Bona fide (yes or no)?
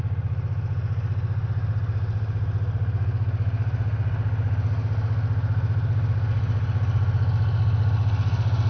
yes